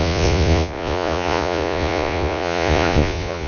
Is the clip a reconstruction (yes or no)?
yes